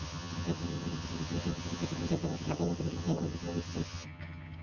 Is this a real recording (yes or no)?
no